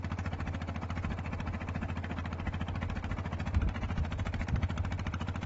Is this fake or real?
real